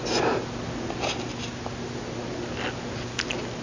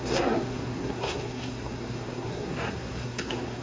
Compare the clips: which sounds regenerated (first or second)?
second